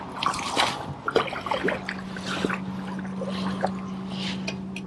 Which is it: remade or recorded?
recorded